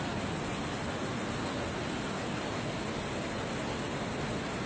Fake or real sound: real